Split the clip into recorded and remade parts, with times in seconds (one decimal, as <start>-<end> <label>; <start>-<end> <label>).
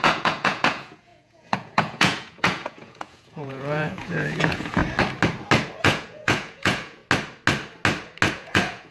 0.0-4.8 remade; 4.8-5.8 recorded; 5.8-7.0 remade; 7.0-8.3 recorded; 8.3-8.9 remade